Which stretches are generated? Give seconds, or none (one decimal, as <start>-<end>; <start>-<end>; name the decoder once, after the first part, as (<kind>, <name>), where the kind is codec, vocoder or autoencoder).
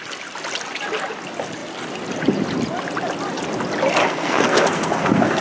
4.0-5.4 (codec, SNAC)